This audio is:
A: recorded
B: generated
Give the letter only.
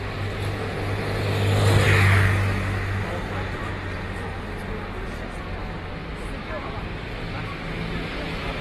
A